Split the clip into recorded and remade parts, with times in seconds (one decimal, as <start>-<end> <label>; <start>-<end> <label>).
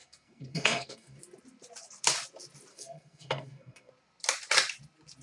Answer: 0.0-1.2 remade; 1.2-2.7 recorded; 2.7-3.9 remade; 3.9-5.2 recorded